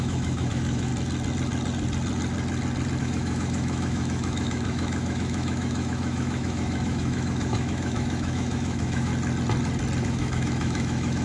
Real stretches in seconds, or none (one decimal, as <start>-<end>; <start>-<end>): 0.9-3.0; 9.1-10.0